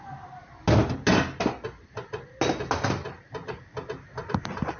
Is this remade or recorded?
recorded